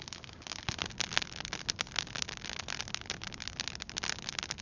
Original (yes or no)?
yes